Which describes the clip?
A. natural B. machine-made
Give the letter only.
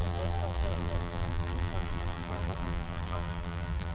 B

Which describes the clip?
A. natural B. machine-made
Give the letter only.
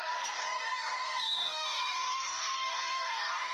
B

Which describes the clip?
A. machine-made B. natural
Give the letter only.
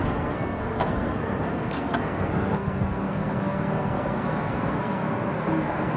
A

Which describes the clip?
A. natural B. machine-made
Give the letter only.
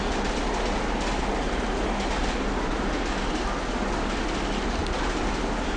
A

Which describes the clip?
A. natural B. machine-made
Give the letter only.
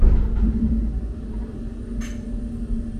A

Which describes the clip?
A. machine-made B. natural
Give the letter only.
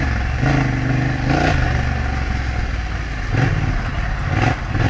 B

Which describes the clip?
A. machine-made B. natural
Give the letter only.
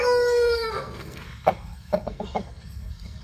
A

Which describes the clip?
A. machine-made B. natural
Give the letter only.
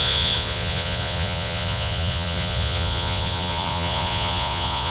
A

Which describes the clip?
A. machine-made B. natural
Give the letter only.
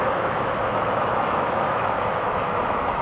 A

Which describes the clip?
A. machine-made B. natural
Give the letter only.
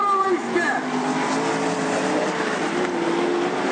B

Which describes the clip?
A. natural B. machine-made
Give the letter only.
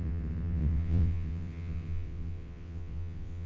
B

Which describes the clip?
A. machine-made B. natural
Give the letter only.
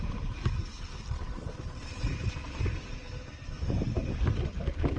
B